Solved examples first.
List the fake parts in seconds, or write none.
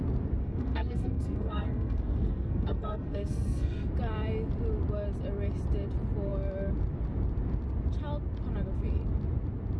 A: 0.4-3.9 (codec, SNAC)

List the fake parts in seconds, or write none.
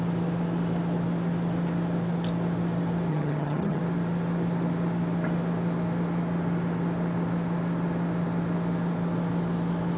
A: 3.1-3.8 (vocoder, HiFi-GAN)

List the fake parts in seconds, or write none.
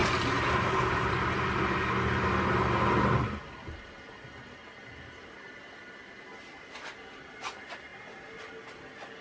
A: none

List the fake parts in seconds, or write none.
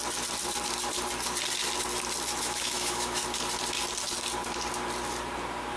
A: 2.4-3.2 (autoencoder, DAC-VAE)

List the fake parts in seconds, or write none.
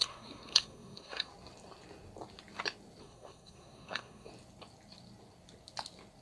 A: 0.0-1.3 (codec, SNAC); 3.0-4.3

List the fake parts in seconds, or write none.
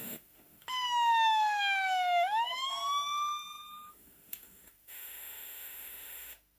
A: 0.0-2.7 (autoencoder, DAC-VAE); 3.9-6.6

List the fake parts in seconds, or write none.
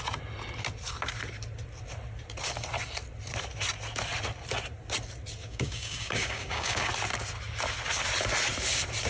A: 5.4-6.9 (codec, DAC)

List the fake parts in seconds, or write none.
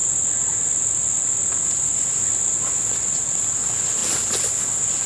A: none